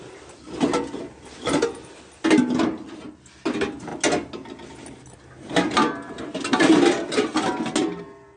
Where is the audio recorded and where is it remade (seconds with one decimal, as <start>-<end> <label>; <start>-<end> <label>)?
0.0-8.4 recorded